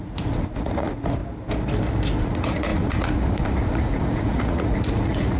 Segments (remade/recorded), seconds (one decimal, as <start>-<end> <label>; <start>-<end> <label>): 0.0-1.2 remade; 1.2-2.2 recorded; 2.2-5.4 remade